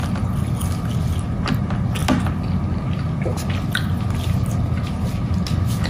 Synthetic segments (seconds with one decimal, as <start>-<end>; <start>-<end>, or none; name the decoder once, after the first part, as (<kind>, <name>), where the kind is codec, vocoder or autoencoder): none